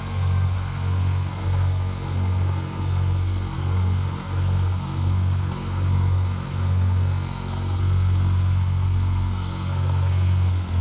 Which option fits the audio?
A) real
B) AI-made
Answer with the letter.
B